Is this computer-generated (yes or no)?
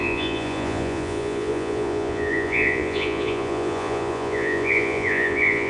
yes